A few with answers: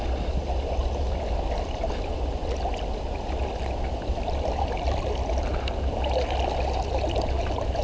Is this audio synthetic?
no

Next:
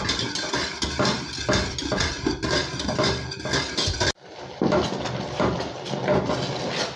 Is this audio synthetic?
no